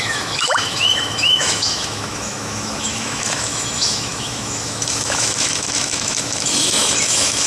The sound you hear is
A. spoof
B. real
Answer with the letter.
A